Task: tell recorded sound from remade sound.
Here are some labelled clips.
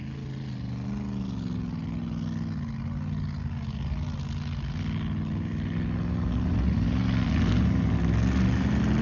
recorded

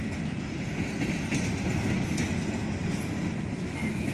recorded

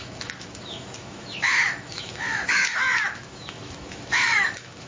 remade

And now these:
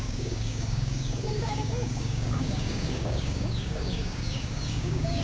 remade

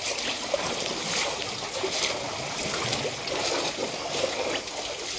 recorded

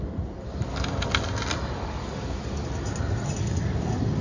recorded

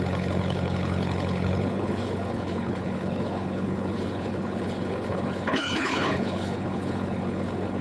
remade